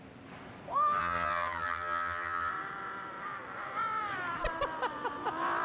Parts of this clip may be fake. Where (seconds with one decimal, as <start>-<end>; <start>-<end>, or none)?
1.0-2.5